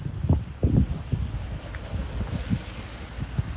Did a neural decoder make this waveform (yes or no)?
no